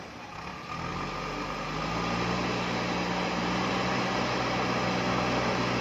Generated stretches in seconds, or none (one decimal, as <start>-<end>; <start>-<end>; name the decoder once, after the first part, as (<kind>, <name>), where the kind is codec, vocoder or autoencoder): none